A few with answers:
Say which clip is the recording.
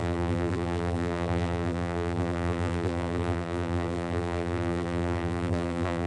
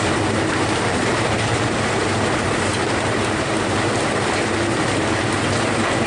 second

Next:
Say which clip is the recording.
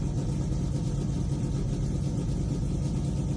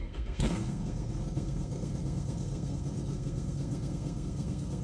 first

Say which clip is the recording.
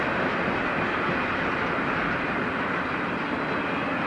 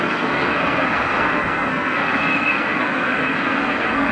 first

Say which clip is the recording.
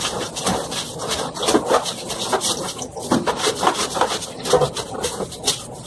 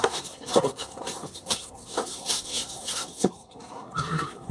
first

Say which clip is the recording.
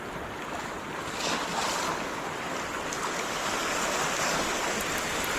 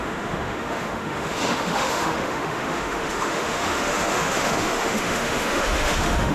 first